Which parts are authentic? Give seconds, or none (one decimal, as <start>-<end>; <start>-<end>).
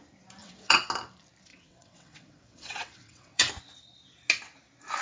0.0-0.4; 0.9-1.5; 3.5-5.0